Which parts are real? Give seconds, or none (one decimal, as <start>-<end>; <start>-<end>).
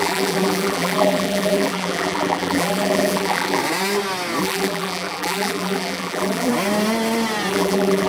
3.6-4.4; 6.5-7.5